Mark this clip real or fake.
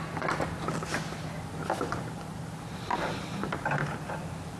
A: real